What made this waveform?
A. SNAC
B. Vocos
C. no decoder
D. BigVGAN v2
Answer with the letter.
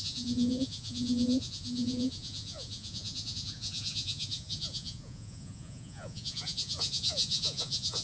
B